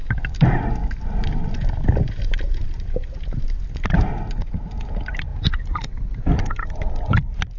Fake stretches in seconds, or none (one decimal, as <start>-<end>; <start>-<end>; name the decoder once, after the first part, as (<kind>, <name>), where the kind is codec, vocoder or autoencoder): 0.0-3.8 (vocoder, BigVGAN v2); 5.3-7.6

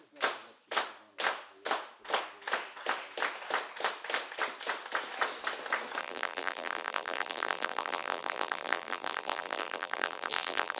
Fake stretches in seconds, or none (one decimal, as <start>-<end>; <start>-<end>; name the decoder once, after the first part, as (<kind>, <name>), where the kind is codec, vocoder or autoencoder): 6.0-10.8 (vocoder, BigVGAN v2)

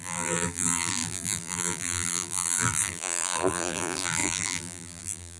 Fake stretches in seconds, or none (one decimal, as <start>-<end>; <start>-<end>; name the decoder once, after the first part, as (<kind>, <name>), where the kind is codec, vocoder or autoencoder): 0.0-5.4 (vocoder, BigVGAN v2)

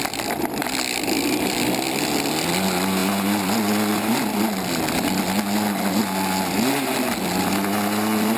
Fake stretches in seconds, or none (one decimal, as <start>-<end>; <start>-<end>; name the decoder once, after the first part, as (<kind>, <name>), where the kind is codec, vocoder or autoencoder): none

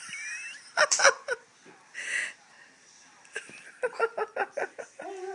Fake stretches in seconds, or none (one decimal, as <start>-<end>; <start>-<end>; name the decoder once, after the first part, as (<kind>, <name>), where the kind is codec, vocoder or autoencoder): 0.0-1.5 (vocoder, BigVGAN v2); 4.7-5.3

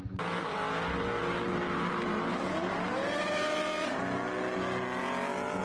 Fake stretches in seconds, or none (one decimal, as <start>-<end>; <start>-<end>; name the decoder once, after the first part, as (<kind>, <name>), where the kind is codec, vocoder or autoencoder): 0.5-1.1 (vocoder, BigVGAN v2)

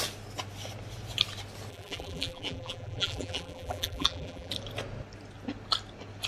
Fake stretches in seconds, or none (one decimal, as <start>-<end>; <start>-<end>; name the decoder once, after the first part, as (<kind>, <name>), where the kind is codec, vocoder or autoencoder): 1.7-4.5 (vocoder, BigVGAN v2)